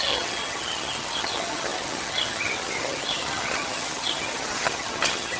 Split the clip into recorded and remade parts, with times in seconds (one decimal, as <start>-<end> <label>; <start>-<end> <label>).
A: 0.0-5.4 remade